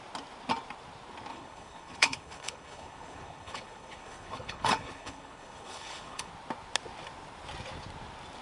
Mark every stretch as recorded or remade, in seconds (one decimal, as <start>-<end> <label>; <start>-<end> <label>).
0.0-1.3 recorded; 1.3-6.3 remade; 6.3-8.4 recorded